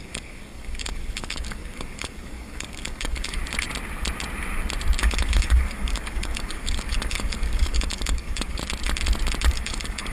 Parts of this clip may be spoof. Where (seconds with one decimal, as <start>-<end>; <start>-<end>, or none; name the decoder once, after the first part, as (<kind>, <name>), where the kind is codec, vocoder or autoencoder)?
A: 0.0-3.4 (codec, DAC); 5.0-8.6; 9.5-10.1